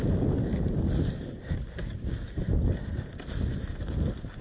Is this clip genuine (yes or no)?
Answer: yes